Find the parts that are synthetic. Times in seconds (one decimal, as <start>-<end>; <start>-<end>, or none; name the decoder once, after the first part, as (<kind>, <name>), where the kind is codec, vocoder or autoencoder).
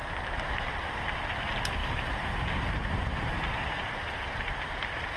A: 1.8-4.1 (vocoder, BigVGAN v2)